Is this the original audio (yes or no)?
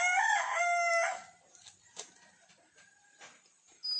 yes